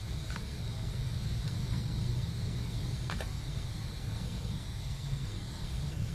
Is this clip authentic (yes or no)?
no